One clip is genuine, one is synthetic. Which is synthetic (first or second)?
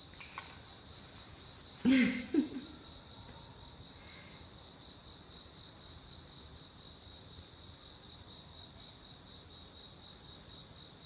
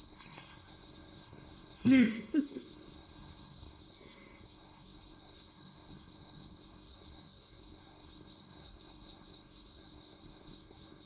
second